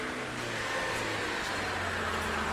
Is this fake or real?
real